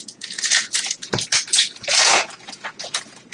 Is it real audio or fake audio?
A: fake